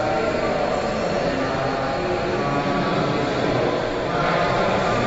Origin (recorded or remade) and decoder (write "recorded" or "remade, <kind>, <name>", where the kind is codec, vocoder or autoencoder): recorded